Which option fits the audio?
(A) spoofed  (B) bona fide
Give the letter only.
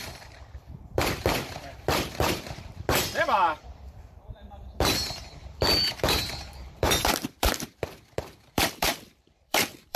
A